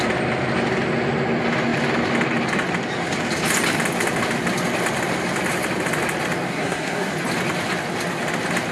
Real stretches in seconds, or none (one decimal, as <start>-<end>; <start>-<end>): 0.0-6.5; 7.1-8.7